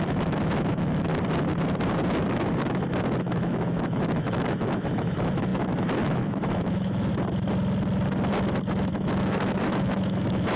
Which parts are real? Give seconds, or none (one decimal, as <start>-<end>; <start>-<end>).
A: 1.1-3.2; 7.1-8.9